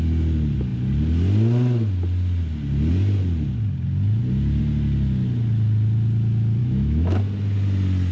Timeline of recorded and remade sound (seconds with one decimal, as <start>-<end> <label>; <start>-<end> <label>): 0.0-6.6 recorded; 6.6-7.2 remade; 7.2-8.1 recorded